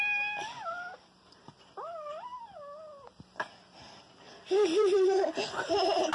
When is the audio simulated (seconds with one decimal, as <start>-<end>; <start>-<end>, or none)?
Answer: 0.0-2.3; 3.8-6.1